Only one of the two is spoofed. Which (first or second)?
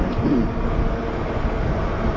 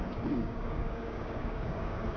second